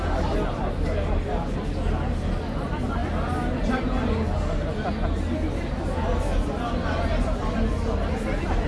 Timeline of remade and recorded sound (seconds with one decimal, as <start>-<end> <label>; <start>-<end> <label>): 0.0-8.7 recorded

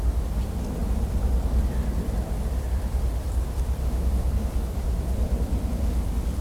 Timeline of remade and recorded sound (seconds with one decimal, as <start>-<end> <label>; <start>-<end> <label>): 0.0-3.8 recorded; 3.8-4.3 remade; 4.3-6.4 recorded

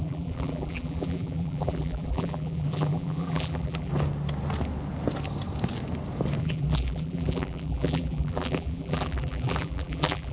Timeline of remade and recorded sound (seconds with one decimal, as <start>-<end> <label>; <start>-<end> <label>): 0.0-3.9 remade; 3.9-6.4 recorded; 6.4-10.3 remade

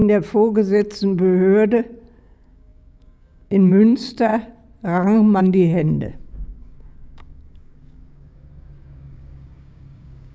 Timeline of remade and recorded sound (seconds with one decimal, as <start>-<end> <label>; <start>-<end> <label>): 0.0-2.2 recorded; 2.2-4.3 remade; 4.3-5.4 recorded; 5.4-10.3 remade

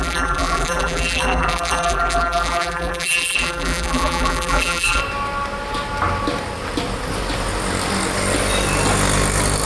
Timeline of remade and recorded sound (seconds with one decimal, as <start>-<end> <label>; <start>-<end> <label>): 0.0-5.0 remade; 5.0-9.7 recorded

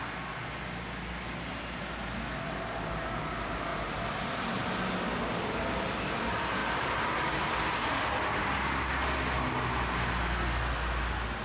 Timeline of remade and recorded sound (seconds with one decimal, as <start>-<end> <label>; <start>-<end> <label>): 0.0-11.4 recorded

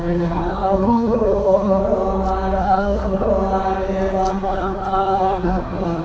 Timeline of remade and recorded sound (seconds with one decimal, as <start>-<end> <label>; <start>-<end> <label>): 0.0-1.8 remade; 1.8-2.6 recorded; 2.6-3.3 remade; 3.3-4.3 recorded; 4.3-6.0 remade